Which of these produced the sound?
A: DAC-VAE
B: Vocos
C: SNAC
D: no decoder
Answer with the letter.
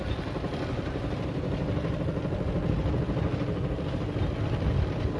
D